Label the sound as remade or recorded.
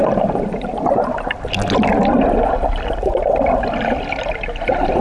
recorded